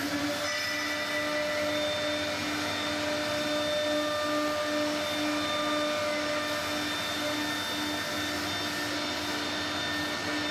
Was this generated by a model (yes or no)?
no